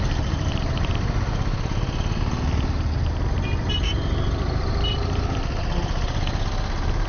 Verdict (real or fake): real